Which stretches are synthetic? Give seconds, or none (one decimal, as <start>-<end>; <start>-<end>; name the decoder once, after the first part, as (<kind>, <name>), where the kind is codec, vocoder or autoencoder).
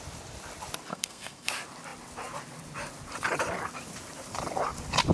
0.9-1.5 (codec, SNAC)